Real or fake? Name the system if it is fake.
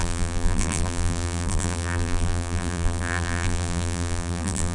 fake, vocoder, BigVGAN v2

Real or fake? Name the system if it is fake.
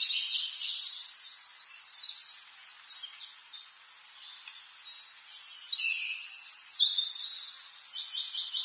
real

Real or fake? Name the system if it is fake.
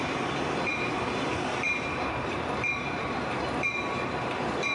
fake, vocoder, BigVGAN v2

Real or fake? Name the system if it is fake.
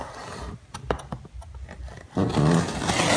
real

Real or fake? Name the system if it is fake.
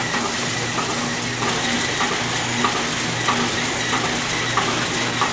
real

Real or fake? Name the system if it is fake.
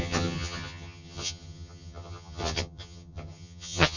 fake, vocoder, HiFi-GAN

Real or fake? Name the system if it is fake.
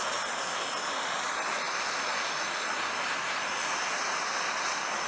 real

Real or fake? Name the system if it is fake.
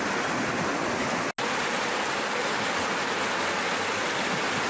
real